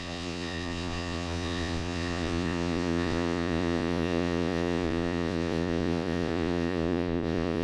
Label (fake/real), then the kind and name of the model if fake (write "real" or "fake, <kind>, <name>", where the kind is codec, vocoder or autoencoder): fake, vocoder, Vocos